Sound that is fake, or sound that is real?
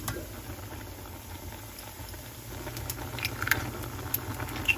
real